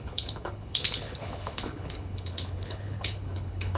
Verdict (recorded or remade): remade